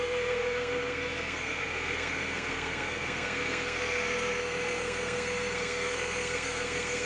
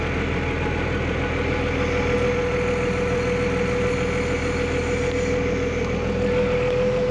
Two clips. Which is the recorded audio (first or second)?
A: second